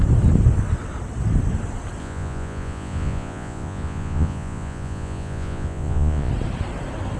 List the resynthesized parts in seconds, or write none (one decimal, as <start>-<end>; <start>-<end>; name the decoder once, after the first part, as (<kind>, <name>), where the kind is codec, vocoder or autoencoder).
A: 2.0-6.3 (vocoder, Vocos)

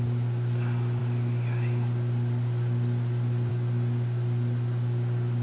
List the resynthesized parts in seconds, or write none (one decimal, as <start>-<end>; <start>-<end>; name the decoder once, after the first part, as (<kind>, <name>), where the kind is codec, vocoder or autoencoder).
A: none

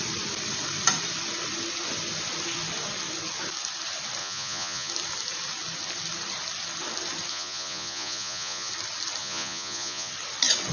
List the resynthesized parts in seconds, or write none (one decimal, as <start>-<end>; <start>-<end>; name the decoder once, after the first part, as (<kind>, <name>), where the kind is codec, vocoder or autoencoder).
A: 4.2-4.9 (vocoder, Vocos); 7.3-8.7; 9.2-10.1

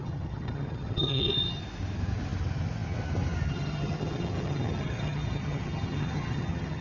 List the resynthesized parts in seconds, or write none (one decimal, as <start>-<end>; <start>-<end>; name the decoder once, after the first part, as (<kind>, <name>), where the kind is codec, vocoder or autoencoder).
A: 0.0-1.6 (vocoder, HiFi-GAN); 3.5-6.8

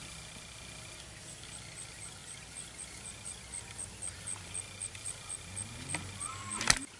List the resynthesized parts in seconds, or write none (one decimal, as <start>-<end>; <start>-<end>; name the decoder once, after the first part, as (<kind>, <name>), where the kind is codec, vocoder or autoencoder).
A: none

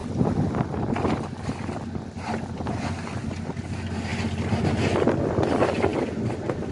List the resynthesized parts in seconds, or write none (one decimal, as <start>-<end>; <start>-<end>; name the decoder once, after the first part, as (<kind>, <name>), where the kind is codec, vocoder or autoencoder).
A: none

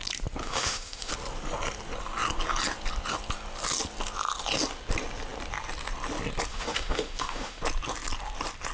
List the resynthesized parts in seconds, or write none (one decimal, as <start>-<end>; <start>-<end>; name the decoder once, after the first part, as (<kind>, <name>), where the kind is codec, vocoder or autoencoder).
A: 0.4-1.1 (autoencoder, DAC-VAE); 6.5-7.6